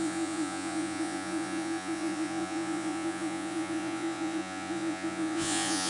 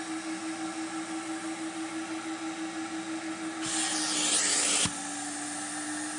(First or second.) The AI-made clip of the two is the first